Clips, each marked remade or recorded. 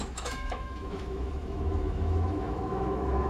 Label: remade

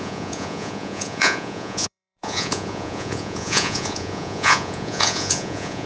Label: remade